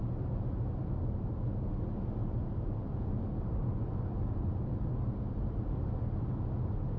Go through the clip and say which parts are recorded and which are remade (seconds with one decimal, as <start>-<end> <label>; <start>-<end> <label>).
0.0-2.2 recorded; 2.2-6.4 remade; 6.4-7.0 recorded